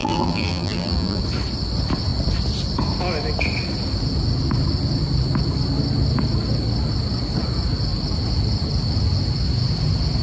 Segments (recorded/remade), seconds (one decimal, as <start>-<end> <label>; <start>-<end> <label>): 0.0-1.2 remade; 1.2-10.2 recorded